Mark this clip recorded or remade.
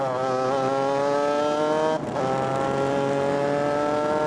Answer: recorded